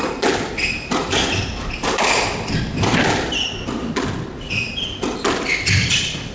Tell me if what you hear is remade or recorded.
recorded